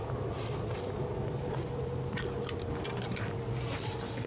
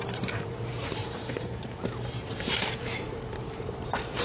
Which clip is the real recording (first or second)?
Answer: first